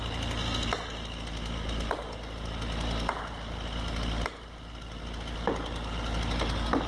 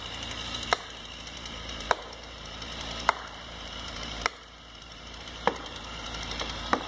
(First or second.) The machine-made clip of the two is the second